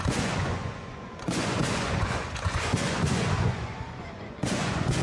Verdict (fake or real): fake